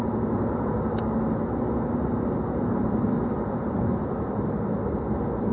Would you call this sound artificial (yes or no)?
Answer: no